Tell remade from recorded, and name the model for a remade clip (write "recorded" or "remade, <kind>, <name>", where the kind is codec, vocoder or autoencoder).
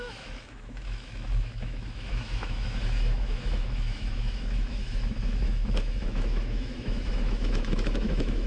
remade, autoencoder, DAC-VAE